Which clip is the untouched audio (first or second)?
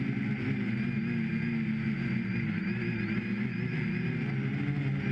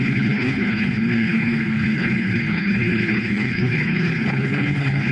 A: first